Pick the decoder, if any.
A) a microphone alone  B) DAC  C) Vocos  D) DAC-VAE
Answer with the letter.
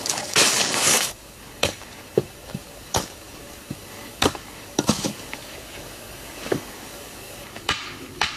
B